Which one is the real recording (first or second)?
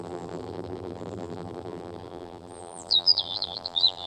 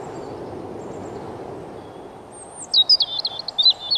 second